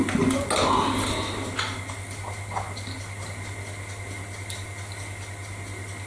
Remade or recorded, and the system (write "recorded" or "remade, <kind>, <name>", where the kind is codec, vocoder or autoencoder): recorded